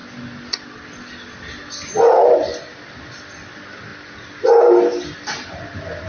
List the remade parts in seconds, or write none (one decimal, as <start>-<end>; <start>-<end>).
none